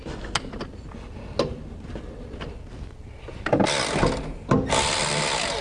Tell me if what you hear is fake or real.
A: real